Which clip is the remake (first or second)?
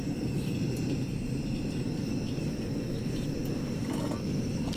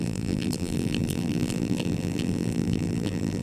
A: second